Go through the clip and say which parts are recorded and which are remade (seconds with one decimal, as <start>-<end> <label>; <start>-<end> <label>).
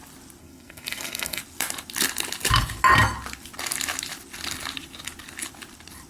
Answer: 0.0-0.4 recorded; 0.4-1.4 remade; 1.4-6.1 recorded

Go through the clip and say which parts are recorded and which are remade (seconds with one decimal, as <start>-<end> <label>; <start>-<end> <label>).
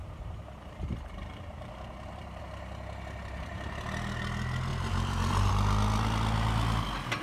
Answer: 0.0-2.4 remade; 2.4-4.7 recorded; 4.7-5.5 remade; 5.5-7.2 recorded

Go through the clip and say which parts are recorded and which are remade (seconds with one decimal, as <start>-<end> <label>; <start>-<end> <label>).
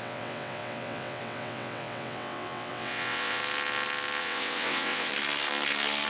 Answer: 0.0-3.4 remade; 3.4-4.2 recorded; 4.2-5.1 remade; 5.1-6.1 recorded